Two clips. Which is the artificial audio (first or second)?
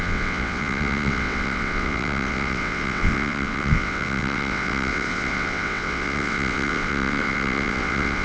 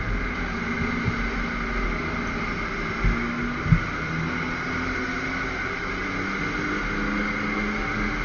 first